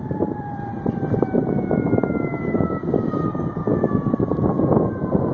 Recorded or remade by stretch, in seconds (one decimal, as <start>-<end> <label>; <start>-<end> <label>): 0.0-1.4 remade; 1.4-2.4 recorded; 2.4-5.3 remade